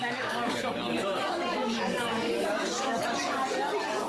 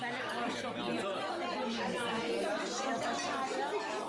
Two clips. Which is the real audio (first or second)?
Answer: second